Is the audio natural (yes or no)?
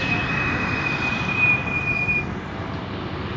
yes